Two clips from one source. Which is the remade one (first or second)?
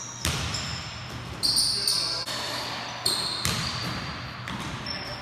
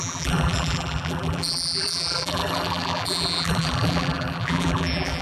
second